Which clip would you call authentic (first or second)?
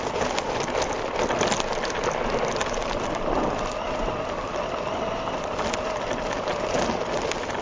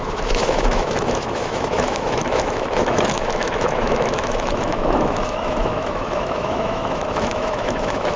first